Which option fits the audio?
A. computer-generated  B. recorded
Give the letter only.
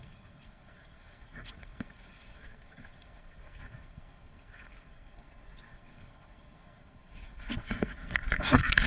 A